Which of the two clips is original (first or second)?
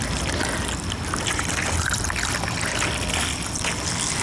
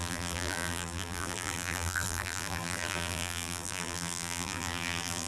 first